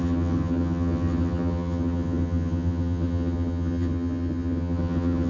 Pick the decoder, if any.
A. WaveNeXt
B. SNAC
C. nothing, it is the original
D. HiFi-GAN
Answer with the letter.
D